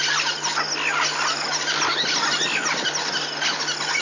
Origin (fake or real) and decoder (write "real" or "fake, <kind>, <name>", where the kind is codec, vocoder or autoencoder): real